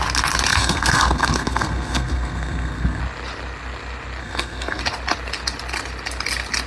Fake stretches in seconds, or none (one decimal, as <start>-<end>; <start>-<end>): 0.5-3.0; 4.2-4.8